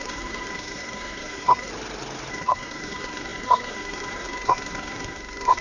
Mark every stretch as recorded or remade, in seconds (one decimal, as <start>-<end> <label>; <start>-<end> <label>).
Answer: 0.0-1.7 remade; 1.7-2.3 recorded; 2.3-5.6 remade